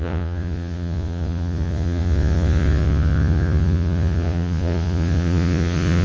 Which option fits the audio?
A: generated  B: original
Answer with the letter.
A